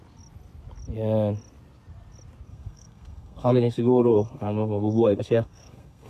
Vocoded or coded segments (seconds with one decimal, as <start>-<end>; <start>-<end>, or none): 2.5-6.1